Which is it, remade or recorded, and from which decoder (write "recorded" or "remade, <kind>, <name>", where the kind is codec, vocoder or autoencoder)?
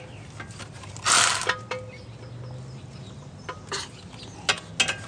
recorded